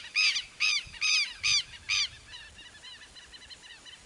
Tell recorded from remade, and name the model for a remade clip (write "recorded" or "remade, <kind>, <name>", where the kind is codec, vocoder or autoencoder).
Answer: recorded